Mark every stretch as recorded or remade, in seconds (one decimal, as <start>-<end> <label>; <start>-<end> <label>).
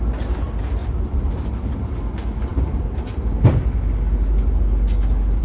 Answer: 0.0-5.4 recorded